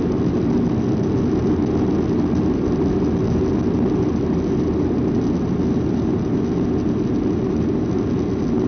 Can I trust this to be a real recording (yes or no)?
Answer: yes